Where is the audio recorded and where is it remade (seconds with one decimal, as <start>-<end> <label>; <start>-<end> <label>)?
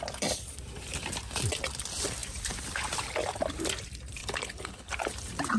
0.0-4.2 recorded; 4.2-4.9 remade; 4.9-5.6 recorded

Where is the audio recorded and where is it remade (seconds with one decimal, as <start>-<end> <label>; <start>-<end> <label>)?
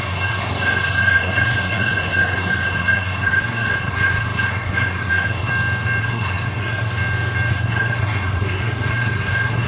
0.0-5.5 remade; 5.5-6.0 recorded; 6.0-6.9 remade; 6.9-7.5 recorded; 7.5-9.7 remade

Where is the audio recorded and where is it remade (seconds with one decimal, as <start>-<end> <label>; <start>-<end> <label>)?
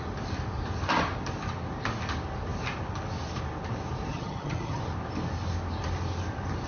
0.0-4.1 recorded; 4.1-4.8 remade; 4.8-6.7 recorded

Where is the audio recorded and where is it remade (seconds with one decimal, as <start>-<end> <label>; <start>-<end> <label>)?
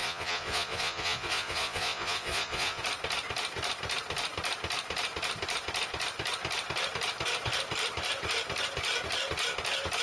0.0-2.8 remade; 2.8-10.0 recorded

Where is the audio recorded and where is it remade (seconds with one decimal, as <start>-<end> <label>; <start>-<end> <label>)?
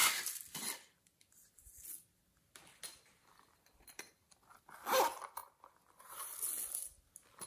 0.0-7.5 recorded